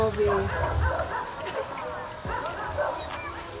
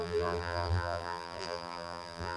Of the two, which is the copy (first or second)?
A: second